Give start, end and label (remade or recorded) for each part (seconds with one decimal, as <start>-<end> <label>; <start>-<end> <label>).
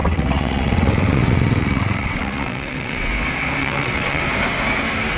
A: 0.0-3.1 remade; 3.1-3.6 recorded; 3.6-4.2 remade; 4.2-5.2 recorded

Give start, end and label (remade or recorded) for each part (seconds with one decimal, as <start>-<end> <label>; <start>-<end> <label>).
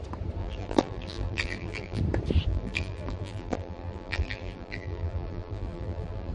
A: 0.0-0.4 recorded; 0.4-2.0 remade; 2.0-2.5 recorded; 2.5-6.3 remade